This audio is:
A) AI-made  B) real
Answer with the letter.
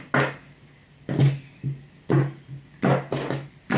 B